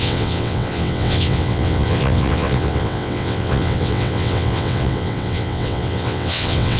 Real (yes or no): no